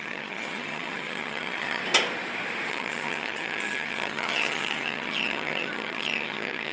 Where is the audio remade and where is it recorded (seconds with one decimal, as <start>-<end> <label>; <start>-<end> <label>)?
0.0-1.8 remade; 1.8-2.7 recorded; 2.7-6.7 remade